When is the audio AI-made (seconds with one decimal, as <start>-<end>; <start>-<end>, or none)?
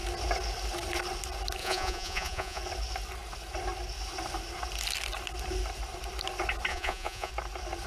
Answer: 1.6-2.6; 6.7-7.3